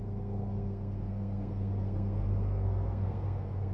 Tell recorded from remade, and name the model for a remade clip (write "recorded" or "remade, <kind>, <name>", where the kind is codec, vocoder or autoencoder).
remade, codec, SNAC